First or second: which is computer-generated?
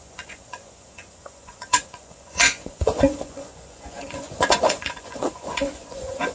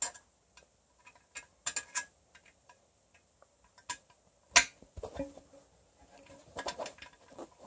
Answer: first